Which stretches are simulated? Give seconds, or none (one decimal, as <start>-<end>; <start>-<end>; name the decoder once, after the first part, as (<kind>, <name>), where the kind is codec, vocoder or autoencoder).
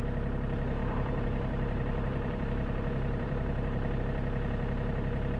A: 0.8-4.0 (vocoder, BigVGAN v2)